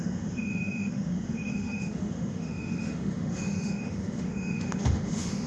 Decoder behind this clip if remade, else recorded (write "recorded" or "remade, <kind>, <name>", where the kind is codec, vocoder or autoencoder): remade, autoencoder, DAC-VAE